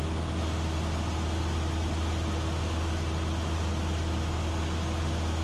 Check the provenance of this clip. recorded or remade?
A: recorded